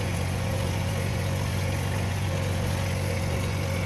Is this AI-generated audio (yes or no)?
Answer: yes